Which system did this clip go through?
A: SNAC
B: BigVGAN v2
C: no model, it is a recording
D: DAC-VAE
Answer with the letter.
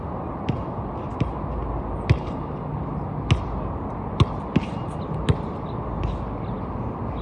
C